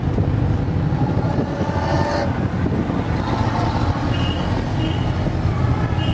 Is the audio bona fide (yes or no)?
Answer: yes